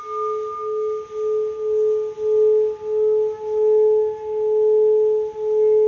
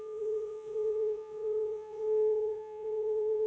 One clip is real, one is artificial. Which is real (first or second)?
first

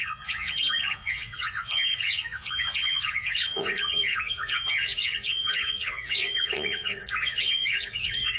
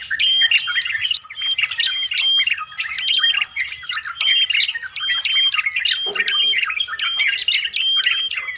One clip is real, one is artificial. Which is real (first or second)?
second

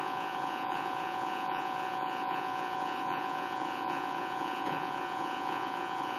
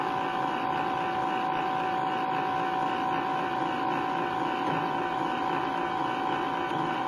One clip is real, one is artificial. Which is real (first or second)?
second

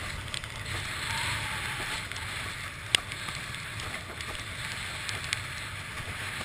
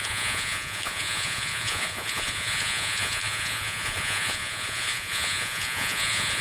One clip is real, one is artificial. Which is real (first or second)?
first